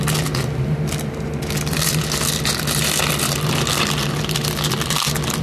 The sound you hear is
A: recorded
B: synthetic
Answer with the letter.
A